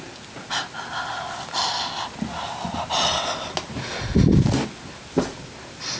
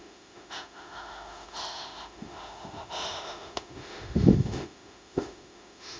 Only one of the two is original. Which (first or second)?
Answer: first